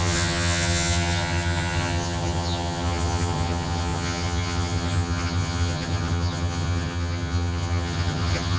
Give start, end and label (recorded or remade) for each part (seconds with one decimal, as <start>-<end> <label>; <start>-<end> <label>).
0.0-8.6 remade